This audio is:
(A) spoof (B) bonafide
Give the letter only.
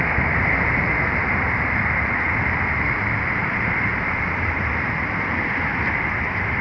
A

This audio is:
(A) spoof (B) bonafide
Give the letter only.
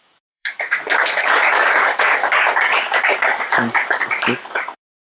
A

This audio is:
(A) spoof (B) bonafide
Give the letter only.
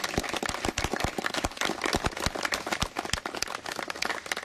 B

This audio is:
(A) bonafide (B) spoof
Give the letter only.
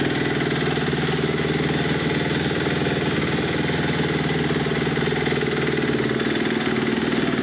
A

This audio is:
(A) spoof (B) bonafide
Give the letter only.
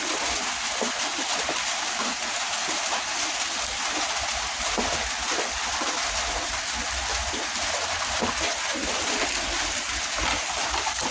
B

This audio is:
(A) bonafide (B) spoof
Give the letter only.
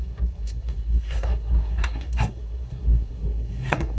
B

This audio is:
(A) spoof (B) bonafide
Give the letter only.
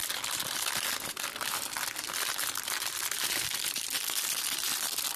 A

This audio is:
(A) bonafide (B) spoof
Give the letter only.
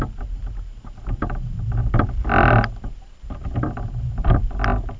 A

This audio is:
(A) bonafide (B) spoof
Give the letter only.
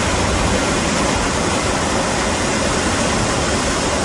A